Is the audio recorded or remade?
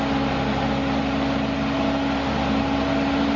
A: recorded